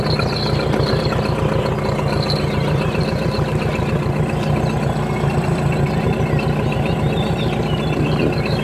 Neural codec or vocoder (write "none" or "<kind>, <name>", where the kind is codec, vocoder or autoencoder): none